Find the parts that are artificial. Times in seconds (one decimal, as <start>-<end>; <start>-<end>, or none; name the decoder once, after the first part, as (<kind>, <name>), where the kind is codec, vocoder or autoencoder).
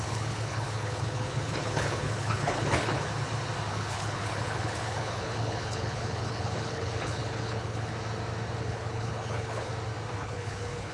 0.0-3.1 (codec, HILCodec); 3.7-7.9; 8.6-9.7; 10.2-10.9